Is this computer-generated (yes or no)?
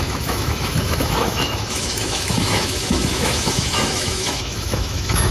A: yes